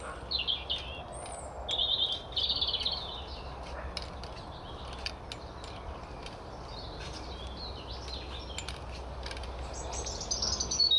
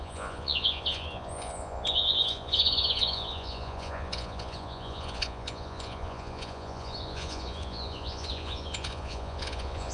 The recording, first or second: first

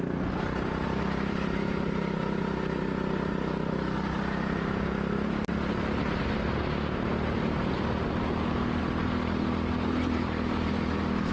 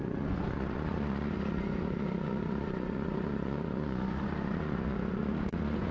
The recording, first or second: first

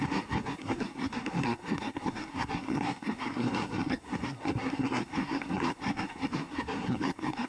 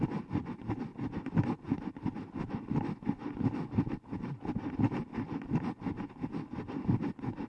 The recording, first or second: second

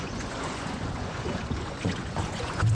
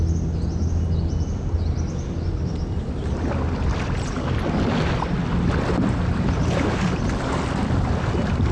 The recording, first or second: second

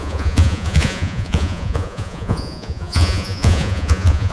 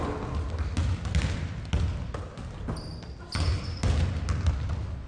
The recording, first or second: second